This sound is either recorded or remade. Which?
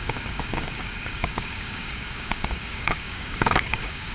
remade